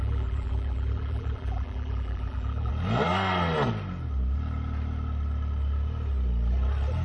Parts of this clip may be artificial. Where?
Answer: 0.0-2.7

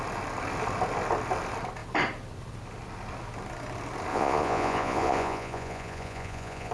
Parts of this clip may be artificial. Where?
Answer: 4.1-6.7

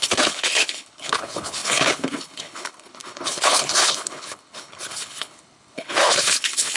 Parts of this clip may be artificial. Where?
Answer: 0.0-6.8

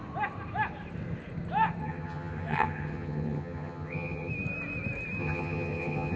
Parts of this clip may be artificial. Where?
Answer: 1.8-4.3; 5.2-6.2

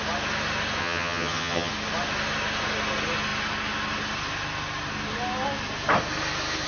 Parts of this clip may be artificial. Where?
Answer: 0.8-1.7